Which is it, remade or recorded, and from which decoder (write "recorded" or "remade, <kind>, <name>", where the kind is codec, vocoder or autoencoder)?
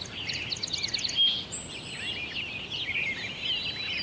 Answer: recorded